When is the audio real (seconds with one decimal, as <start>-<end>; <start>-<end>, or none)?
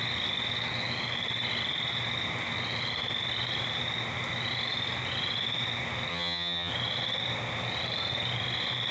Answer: 0.0-6.1; 6.7-8.9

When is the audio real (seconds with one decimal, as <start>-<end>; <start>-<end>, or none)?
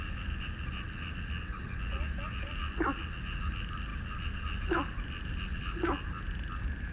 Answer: 0.0-6.9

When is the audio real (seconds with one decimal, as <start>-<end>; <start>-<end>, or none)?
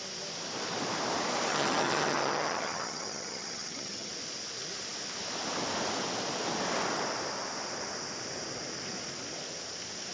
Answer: 0.0-1.5; 4.1-10.1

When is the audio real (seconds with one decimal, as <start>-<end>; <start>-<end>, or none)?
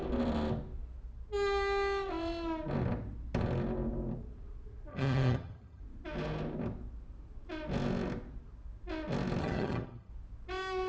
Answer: 0.0-4.9; 5.8-9.4; 10.1-10.9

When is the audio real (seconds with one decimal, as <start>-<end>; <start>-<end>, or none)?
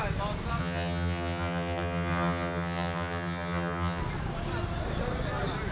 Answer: 0.0-0.6; 4.0-5.7